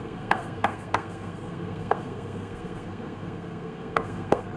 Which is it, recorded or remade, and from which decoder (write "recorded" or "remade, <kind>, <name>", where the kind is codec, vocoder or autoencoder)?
remade, codec, SNAC